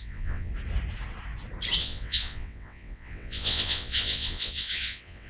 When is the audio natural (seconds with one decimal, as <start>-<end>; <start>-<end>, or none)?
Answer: 0.5-1.8